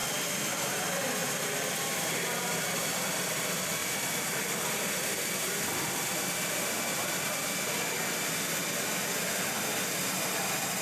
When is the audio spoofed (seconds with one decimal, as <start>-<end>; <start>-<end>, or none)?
0.0-0.7; 1.2-2.9